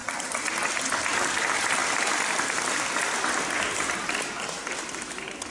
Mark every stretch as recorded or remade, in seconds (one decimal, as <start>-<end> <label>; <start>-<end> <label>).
0.0-1.8 recorded; 1.8-5.1 remade; 5.1-5.5 recorded